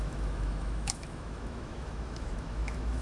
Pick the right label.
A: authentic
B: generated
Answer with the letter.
B